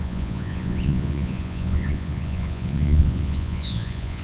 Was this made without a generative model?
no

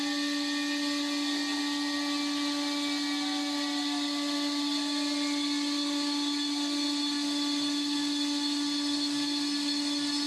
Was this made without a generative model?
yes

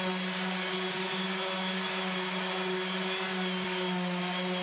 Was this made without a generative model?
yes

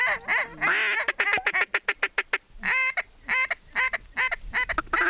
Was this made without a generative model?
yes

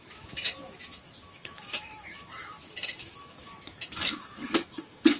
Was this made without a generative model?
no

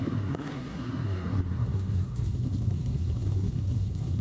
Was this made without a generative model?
no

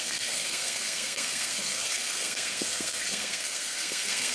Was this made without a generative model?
no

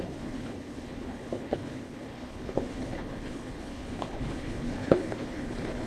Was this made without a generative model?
no